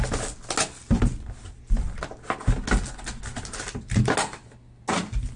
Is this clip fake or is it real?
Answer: real